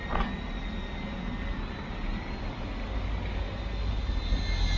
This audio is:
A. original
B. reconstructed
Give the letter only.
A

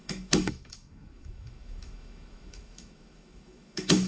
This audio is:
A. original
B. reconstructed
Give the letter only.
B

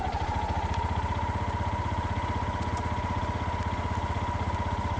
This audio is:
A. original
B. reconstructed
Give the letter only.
A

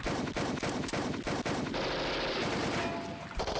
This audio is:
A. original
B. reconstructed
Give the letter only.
A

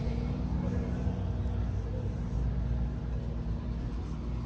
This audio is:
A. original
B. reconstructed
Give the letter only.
A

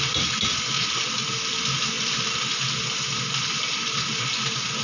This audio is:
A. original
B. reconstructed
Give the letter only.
A